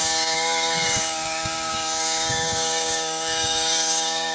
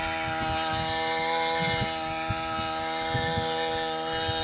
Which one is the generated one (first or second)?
first